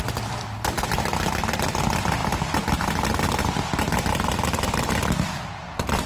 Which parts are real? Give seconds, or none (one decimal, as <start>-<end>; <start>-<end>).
0.0-6.1